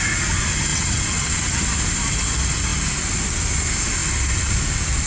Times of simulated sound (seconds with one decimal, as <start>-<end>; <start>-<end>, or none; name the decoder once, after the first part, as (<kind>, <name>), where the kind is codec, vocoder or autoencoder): 0.7-1.6 (vocoder, WaveNeXt)

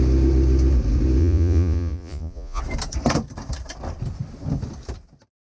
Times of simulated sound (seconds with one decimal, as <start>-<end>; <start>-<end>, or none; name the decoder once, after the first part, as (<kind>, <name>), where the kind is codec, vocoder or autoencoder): 1.2-2.6 (vocoder, Vocos)

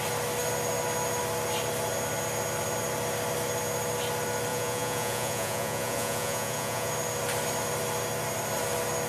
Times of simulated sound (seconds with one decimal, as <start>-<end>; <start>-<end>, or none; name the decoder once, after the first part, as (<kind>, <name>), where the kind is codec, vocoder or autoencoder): 4.5-6.9 (vocoder, Vocos)

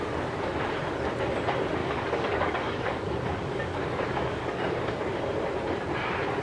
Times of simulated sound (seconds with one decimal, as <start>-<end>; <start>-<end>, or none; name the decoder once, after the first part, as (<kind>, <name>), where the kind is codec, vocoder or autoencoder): 1.8-4.9 (codec, DAC)

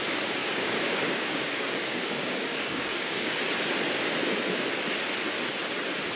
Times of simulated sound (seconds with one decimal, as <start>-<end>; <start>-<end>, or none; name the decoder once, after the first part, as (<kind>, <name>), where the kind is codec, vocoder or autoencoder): 0.4-3.3 (codec, DAC)

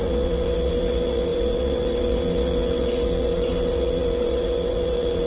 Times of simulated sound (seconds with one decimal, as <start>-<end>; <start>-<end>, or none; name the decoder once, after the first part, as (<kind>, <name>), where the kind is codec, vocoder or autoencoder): 0.0-5.3 (vocoder, WaveNeXt)

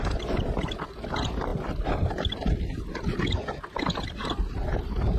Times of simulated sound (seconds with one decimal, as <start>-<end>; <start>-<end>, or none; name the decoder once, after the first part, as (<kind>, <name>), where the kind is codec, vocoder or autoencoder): 0.0-5.2 (vocoder, BigVGAN v2)